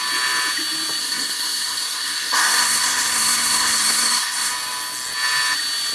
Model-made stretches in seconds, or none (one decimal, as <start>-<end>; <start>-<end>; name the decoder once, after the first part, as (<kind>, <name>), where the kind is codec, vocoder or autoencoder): 1.0-4.5 (codec, SNAC)